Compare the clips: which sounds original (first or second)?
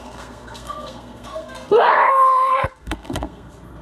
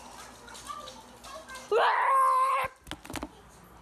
second